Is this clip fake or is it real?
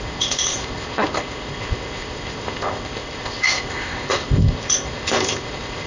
fake